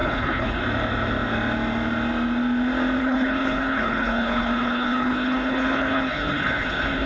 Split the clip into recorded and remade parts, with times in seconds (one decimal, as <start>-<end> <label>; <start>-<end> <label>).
0.0-0.6 remade; 0.6-3.0 recorded; 3.0-7.1 remade